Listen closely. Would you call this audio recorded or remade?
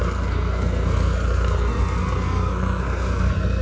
remade